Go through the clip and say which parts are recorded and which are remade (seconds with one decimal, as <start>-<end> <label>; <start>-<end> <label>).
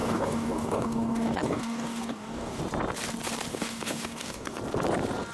0.0-2.6 remade; 2.6-3.5 recorded; 3.5-4.6 remade; 4.6-5.3 recorded